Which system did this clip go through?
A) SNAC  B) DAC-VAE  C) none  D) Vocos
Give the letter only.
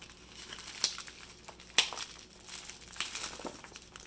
C